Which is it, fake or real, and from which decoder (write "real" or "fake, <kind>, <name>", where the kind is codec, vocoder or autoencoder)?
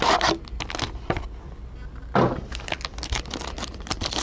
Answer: real